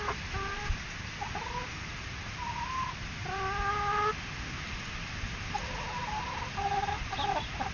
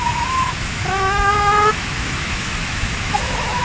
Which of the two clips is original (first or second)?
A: first